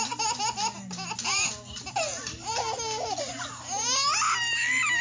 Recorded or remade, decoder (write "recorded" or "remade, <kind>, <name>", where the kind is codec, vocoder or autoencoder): recorded